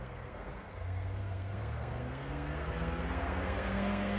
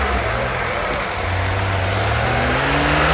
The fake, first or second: first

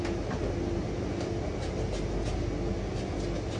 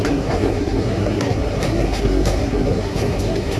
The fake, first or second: second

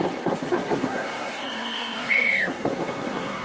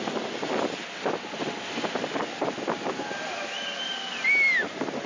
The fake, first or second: first